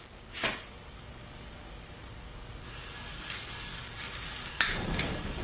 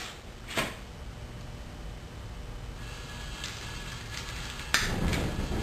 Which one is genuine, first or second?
second